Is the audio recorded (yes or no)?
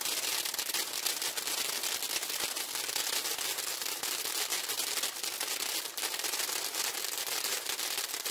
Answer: yes